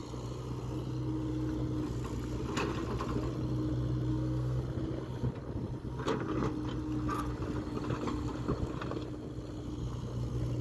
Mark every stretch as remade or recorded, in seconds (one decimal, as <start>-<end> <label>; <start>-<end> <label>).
0.0-4.1 recorded; 4.1-4.6 remade; 4.6-10.6 recorded